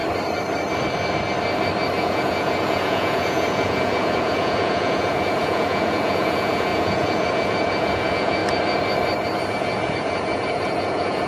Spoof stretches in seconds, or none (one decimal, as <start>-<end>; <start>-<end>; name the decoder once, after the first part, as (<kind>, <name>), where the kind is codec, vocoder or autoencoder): 2.0-8.4 (vocoder, Vocos); 9.5-11.3

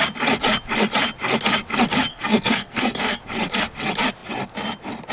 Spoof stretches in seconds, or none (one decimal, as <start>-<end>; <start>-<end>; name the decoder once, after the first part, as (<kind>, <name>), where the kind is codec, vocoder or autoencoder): 2.1-3.2 (codec, SNAC)

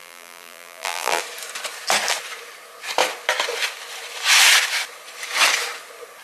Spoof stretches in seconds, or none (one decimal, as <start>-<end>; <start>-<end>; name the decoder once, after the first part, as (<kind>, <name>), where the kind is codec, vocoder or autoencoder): 0.0-1.2 (vocoder, BigVGAN v2)

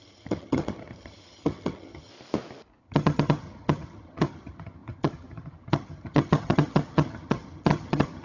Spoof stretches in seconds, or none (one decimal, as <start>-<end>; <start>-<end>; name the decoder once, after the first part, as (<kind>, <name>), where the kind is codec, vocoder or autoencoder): 0.0-2.1 (vocoder, HiFi-GAN); 2.8-8.2

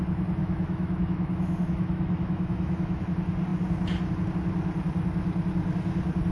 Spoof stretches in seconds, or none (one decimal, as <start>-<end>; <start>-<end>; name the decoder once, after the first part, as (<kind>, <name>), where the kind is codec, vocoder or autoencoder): 0.4-3.0 (autoencoder, DAC-VAE)